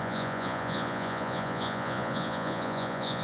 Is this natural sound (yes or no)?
no